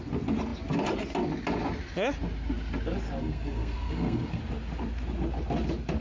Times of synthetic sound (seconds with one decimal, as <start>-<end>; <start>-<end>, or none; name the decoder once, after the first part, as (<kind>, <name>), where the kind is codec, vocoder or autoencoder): 3.2-4.4 (codec, SNAC)